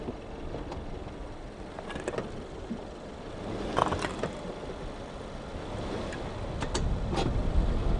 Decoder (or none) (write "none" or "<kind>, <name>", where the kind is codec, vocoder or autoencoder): none